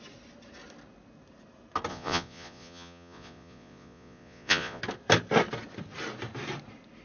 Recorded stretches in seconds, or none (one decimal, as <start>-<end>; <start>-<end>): 0.0-1.9; 4.8-7.0